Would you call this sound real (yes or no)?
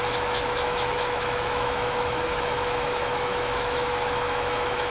no